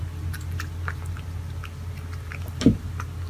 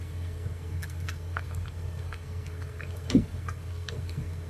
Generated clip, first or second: second